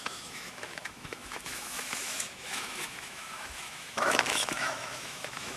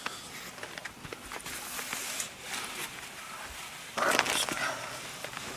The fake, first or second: first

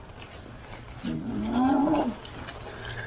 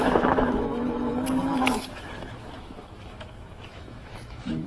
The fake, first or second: second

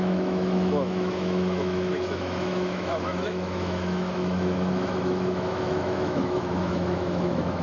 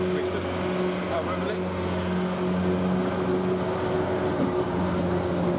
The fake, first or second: first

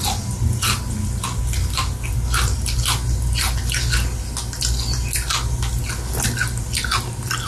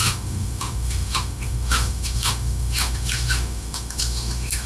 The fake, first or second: second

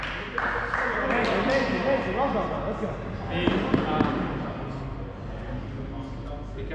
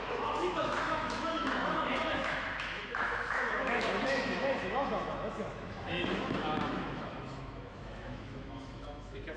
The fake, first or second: second